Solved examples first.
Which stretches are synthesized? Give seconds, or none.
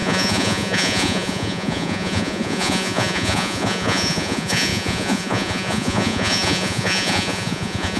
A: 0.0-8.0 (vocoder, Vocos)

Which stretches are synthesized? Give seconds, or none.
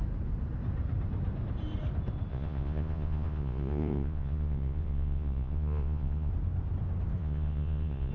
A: 2.3-6.3 (vocoder, Vocos); 7.2-8.1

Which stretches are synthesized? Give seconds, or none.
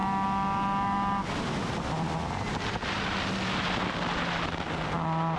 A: none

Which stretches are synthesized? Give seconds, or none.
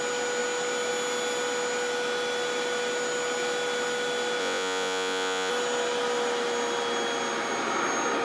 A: 4.4-5.5 (vocoder, Vocos)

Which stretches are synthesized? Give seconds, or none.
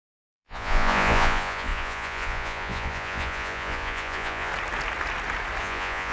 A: 0.0-4.5 (vocoder, Vocos); 5.6-6.1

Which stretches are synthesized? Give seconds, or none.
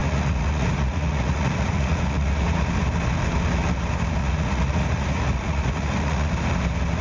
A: 0.0-2.4 (vocoder, Vocos); 4.2-6.3